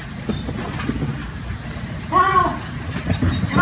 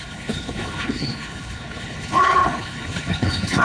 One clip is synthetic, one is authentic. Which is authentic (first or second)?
first